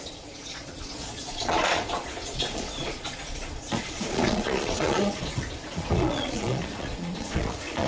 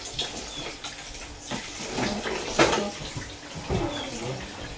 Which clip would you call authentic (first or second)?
second